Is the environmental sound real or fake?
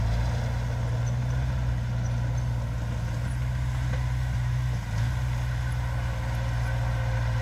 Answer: real